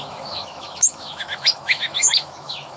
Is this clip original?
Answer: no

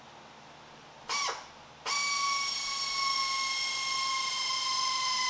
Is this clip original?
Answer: yes